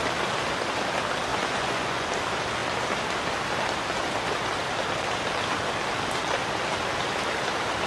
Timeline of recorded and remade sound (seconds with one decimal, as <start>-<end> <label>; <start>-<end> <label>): 0.0-1.3 recorded; 1.3-2.1 remade; 2.1-7.9 recorded